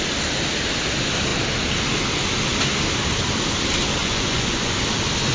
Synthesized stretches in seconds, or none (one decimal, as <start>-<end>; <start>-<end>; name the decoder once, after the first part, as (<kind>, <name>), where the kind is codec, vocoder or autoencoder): 4.0-4.8 (vocoder, Vocos)